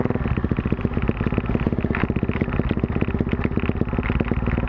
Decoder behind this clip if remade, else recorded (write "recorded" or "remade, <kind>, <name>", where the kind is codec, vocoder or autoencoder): recorded